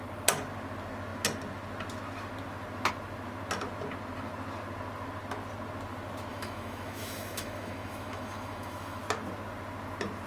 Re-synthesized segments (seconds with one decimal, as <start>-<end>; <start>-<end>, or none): 6.3-9.0